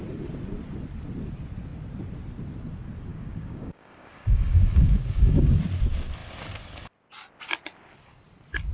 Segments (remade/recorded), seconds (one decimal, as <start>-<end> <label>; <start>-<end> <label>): 0.0-3.1 recorded; 3.1-5.6 remade; 5.6-8.7 recorded

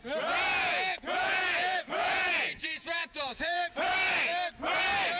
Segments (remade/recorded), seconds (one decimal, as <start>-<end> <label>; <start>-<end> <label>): 0.0-0.5 recorded; 0.5-3.6 remade; 3.6-5.2 recorded

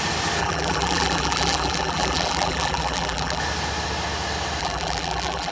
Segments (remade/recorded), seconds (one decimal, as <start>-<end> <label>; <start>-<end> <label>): 0.0-0.4 recorded; 0.4-3.4 remade; 3.4-4.6 recorded; 4.6-5.5 remade

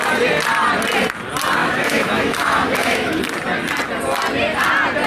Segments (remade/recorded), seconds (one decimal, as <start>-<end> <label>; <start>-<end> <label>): 0.0-1.6 recorded; 1.6-3.2 remade; 3.2-5.1 recorded

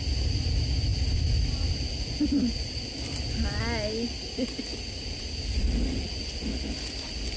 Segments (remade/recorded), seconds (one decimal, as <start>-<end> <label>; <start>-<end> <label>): 0.0-0.9 recorded; 0.9-3.6 remade; 3.6-4.7 recorded; 4.7-6.0 remade; 6.0-7.4 recorded